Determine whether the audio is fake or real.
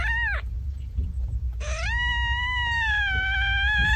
real